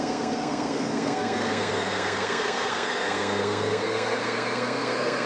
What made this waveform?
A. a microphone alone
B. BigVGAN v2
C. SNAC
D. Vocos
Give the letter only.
C